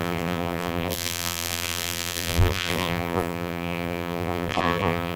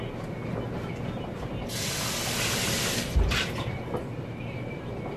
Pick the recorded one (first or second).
second